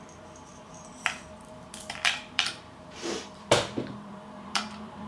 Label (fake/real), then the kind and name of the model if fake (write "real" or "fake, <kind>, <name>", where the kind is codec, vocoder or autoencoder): fake, vocoder, BigVGAN v2